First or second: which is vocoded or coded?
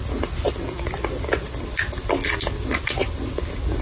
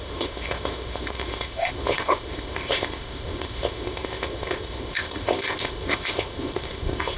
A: second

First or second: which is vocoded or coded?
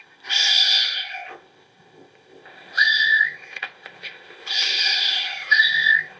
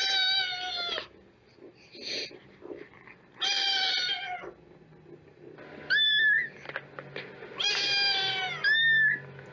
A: first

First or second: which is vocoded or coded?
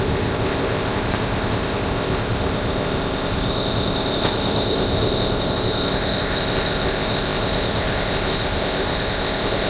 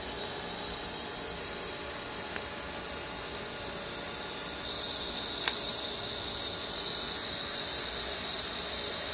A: first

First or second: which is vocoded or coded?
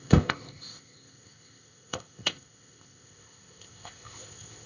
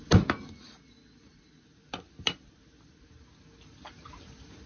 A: first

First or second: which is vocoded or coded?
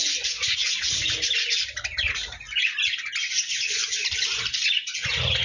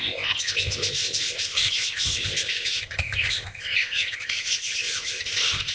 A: second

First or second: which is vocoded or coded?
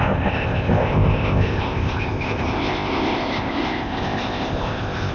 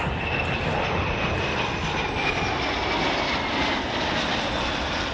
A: first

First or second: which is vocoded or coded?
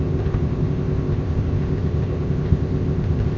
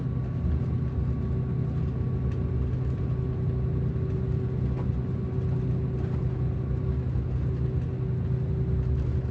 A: first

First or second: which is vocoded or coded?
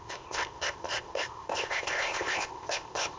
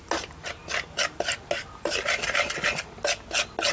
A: first